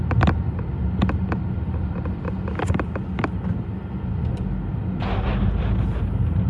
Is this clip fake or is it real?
real